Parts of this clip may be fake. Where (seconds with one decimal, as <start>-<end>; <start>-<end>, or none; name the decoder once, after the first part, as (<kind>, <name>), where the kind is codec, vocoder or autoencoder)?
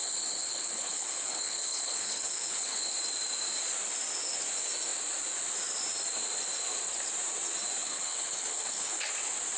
0.0-2.9 (codec, HILCodec); 7.8-9.0